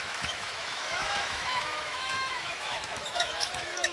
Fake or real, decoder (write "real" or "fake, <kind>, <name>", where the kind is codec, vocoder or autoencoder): fake, autoencoder, DAC-VAE